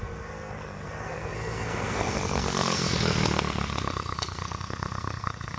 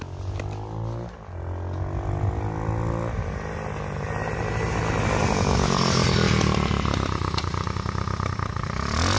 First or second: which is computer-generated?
first